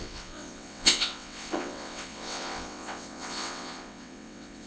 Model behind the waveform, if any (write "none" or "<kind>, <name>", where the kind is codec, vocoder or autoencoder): vocoder, WaveNeXt